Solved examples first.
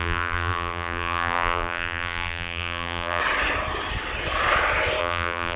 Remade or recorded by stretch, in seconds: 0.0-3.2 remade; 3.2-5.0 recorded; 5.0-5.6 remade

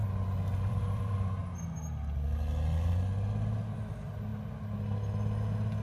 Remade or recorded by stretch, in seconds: 0.0-0.7 recorded; 0.7-1.4 remade; 1.4-3.9 recorded; 3.9-4.3 remade; 4.3-5.8 recorded

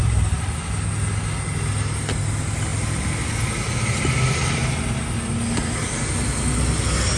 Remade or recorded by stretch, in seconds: 0.0-7.2 recorded

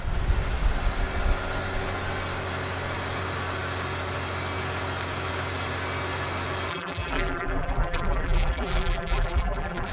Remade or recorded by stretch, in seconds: 0.0-6.7 recorded; 6.7-9.9 remade

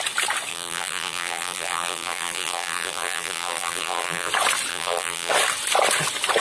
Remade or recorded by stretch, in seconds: 0.0-0.5 recorded; 0.5-4.3 remade; 4.3-4.7 recorded; 4.7-5.3 remade; 5.3-6.4 recorded